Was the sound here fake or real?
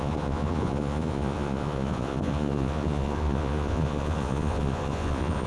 fake